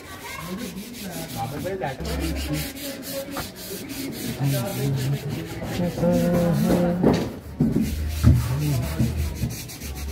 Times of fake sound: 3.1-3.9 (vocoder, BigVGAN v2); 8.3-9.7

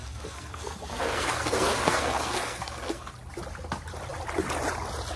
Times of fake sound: 0.0-3.1 (codec, SNAC)

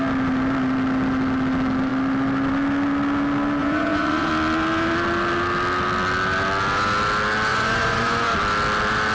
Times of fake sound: 3.6-4.3 (vocoder, Vocos); 7.5-8.3